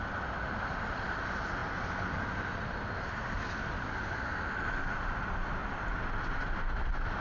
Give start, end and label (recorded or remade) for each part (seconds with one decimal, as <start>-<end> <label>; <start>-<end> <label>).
0.0-7.2 recorded